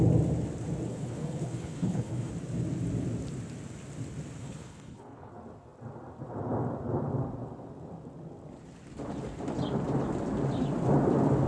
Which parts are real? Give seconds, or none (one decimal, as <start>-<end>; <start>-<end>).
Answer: 0.0-0.9; 2.3-4.4; 5.3-11.5